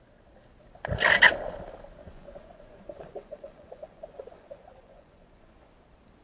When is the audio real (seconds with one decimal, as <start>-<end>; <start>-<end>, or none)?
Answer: 0.0-2.0; 5.7-6.2